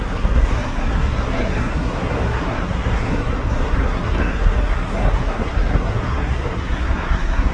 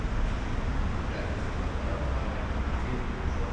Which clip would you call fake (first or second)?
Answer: first